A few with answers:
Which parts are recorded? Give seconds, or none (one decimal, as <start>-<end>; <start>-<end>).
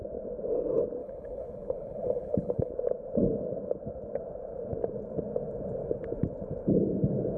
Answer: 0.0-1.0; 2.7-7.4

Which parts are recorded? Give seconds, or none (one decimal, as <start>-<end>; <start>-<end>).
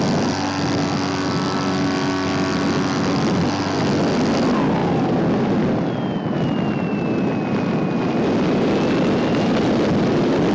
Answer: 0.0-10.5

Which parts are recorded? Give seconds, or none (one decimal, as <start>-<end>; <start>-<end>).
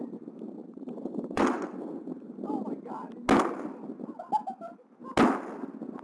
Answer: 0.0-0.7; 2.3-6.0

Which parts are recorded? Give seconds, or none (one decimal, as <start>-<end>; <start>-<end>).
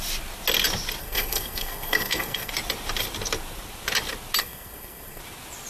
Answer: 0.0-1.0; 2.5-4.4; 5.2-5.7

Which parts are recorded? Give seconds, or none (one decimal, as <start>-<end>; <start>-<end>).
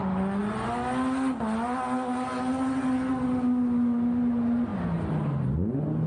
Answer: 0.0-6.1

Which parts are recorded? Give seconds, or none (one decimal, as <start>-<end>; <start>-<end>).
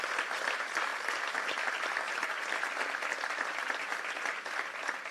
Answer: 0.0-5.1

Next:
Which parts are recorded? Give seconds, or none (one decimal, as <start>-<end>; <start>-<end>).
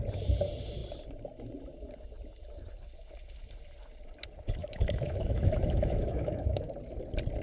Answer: 0.0-4.6; 6.7-7.4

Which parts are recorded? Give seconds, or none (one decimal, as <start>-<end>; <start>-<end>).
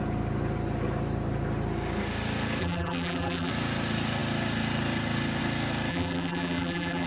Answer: 0.0-2.6; 3.5-5.9